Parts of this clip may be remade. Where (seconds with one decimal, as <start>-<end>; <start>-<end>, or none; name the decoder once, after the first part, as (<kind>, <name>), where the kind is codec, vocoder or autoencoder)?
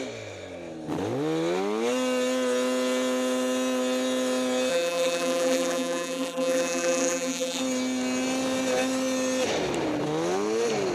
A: 4.7-7.6 (vocoder, BigVGAN v2)